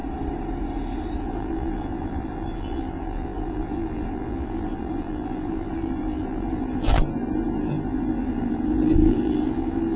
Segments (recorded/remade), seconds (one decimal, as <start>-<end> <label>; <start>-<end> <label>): 0.0-1.2 recorded; 1.2-10.0 remade

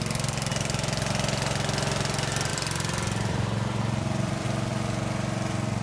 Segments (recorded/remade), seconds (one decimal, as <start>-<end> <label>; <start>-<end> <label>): 0.0-2.5 recorded; 2.5-4.7 remade; 4.7-5.8 recorded

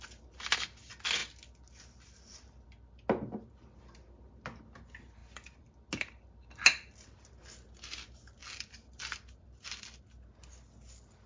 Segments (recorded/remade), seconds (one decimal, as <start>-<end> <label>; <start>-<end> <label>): 0.0-5.2 recorded; 5.2-5.7 remade; 5.7-8.4 recorded; 8.4-10.0 remade; 10.0-11.3 recorded

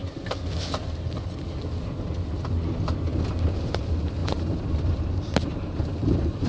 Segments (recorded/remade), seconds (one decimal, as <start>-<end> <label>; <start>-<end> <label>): 0.0-4.2 recorded; 4.2-6.5 remade